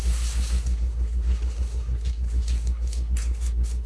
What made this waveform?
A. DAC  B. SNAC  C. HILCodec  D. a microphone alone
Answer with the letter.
B